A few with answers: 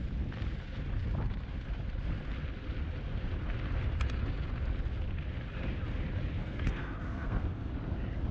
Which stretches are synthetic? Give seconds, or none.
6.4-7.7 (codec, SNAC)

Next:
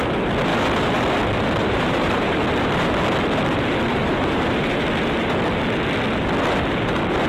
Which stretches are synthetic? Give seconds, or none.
1.6-2.3 (vocoder, BigVGAN v2); 3.9-4.8

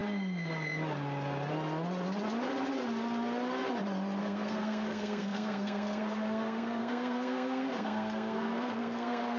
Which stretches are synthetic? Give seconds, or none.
4.2-9.4 (codec, SNAC)

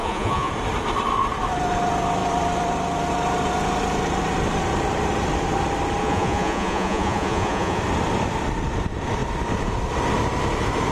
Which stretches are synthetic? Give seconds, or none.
0.0-0.5 (vocoder, Vocos); 6.0-7.8